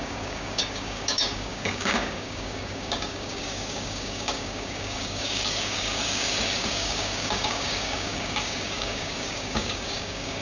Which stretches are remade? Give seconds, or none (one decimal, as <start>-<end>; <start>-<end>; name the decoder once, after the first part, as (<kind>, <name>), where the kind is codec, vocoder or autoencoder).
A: 0.0-10.4 (codec, DAC)